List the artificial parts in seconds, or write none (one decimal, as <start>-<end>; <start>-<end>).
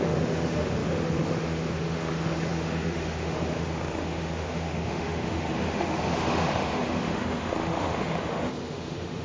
0.0-9.2